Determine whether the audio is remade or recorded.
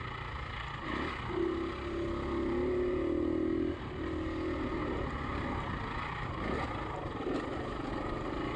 recorded